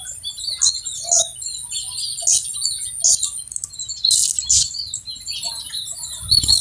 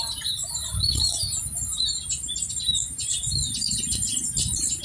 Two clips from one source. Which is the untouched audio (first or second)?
first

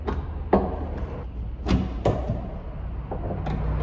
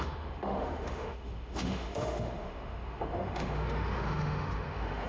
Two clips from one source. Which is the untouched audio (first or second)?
first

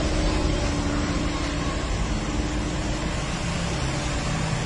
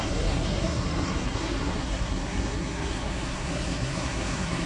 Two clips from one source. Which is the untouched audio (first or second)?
first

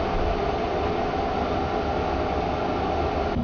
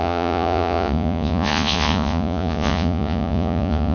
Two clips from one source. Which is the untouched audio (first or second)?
first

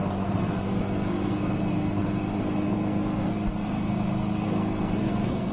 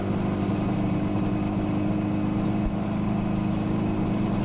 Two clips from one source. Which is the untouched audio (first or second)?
second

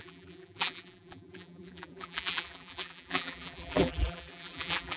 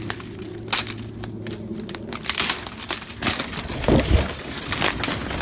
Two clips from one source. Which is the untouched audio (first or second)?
second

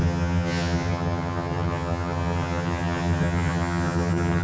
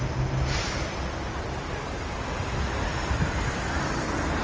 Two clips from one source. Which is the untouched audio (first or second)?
second